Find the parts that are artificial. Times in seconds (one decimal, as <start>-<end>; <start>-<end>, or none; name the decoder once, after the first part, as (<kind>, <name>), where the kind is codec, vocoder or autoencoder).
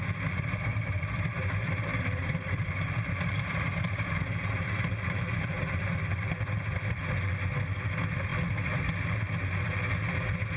0.7-5.6 (vocoder, BigVGAN v2)